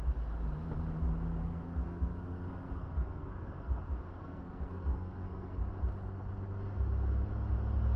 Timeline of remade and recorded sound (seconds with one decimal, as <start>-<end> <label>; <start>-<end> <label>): 0.0-1.4 recorded; 1.4-3.8 remade; 3.8-4.2 recorded; 4.2-5.6 remade; 5.6-8.0 recorded

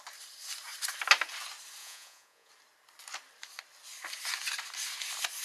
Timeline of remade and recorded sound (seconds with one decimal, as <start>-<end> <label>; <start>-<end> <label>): 0.0-1.8 recorded; 1.8-2.5 remade; 2.5-5.4 recorded